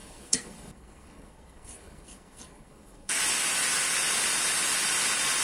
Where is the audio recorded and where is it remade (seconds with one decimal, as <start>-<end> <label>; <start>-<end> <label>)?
0.0-3.2 remade; 3.2-5.4 recorded